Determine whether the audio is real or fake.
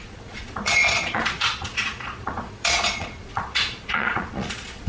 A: fake